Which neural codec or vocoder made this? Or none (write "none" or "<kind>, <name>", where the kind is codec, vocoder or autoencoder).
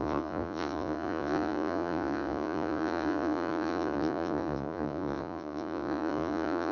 vocoder, Vocos